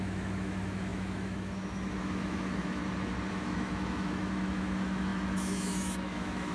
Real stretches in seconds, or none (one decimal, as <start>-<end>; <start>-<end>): 2.8-3.3